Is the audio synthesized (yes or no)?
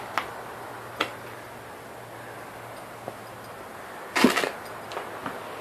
no